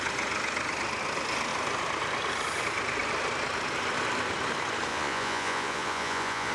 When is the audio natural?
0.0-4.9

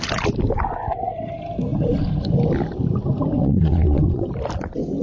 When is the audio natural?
0.0-3.4; 4.3-5.0

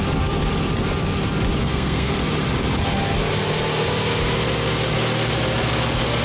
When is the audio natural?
0.0-1.6; 2.1-6.2

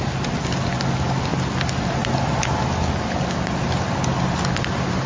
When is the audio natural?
0.0-5.1

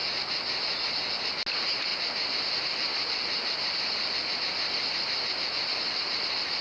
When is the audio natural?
0.0-6.6

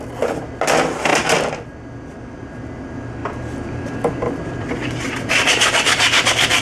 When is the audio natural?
0.0-1.1; 1.7-3.2

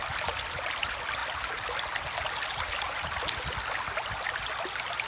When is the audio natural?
0.0-5.1

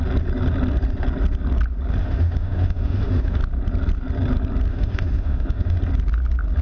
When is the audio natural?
0.0-2.0; 3.4-4.7; 5.8-6.6